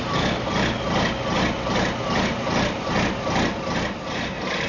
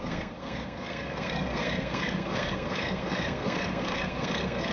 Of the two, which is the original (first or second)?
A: first